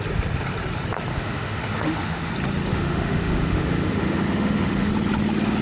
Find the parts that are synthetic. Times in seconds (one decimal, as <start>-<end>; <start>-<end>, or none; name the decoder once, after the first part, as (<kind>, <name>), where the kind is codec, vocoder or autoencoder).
1.1-2.3 (autoencoder, DAC-VAE); 2.7-4.9